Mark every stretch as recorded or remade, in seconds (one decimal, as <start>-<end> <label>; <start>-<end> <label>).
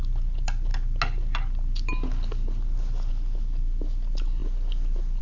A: 0.0-5.2 recorded